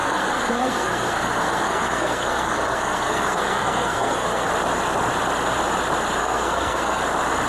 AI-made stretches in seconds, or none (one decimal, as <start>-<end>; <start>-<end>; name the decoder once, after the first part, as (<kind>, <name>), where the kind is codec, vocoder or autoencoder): 0.0-4.5 (codec, SNAC); 6.2-7.0